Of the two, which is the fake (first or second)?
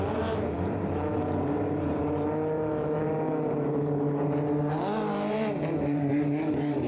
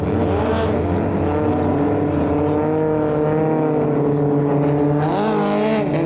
first